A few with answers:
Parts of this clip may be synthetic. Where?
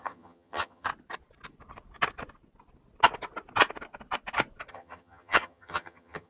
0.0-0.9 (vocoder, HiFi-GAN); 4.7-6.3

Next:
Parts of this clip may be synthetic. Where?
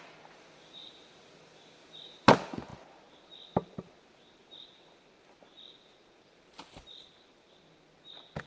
none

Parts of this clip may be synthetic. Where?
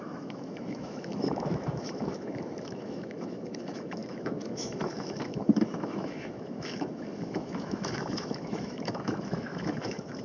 0.0-10.2 (autoencoder, DAC-VAE)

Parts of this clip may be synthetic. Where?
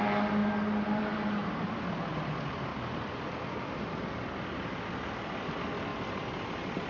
none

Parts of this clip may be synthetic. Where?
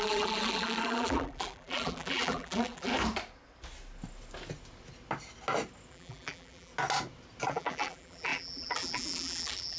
0.0-2.9 (vocoder, BigVGAN v2); 5.9-6.7; 7.5-9.8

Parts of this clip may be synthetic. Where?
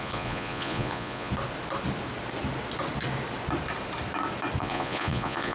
0.0-1.3 (vocoder, Vocos); 4.6-5.5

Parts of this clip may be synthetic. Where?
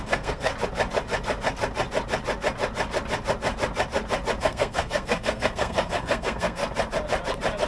0.0-0.5 (codec, SNAC); 4.4-6.6